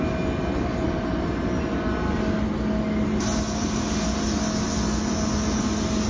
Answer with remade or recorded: recorded